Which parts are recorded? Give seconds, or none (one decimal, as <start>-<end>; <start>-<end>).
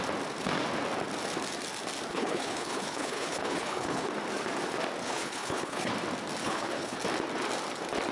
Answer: 0.0-2.1; 4.1-5.0; 5.9-6.4; 7.0-8.1